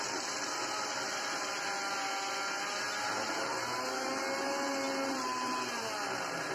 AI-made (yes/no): no